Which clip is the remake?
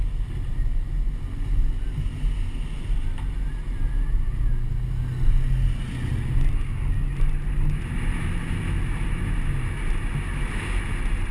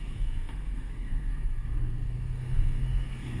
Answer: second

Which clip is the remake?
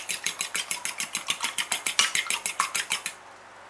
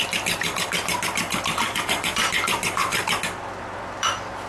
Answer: second